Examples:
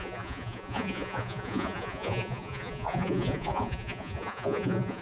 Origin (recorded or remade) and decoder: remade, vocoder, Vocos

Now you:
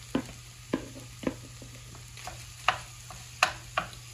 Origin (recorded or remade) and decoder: recorded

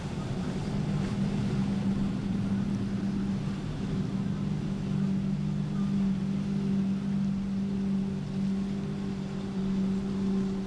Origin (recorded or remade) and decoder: recorded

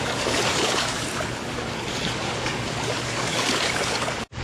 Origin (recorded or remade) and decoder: remade, codec, DAC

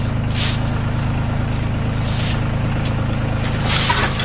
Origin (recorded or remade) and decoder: recorded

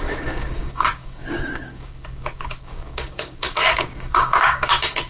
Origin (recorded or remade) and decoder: remade, codec, DAC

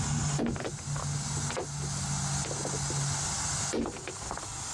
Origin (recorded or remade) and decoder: recorded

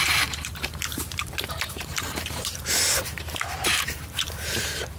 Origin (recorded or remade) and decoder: remade, vocoder, BigVGAN v2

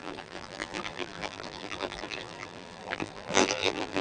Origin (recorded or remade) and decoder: remade, vocoder, BigVGAN v2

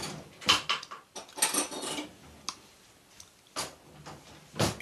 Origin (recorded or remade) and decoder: recorded